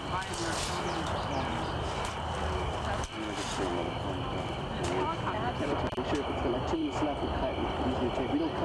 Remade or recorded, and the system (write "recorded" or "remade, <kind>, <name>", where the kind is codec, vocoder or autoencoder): recorded